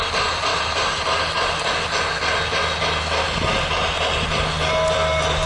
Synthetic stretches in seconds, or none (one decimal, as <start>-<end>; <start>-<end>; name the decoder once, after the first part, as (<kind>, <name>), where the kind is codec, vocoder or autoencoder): 0.5-1.7 (vocoder, BigVGAN v2)

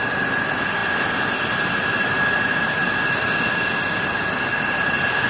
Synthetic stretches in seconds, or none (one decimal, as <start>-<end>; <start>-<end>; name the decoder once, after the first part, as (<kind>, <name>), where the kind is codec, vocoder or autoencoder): none

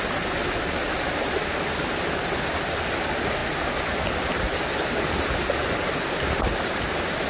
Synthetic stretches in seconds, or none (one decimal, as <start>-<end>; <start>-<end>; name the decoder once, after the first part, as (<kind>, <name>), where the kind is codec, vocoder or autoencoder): none